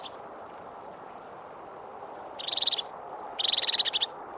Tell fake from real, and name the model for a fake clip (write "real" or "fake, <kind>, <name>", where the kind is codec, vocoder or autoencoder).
real